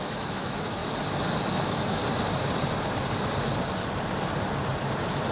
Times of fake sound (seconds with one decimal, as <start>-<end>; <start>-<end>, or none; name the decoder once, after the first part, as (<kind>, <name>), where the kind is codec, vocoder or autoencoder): 0.0-0.8 (autoencoder, DAC-VAE); 1.5-2.0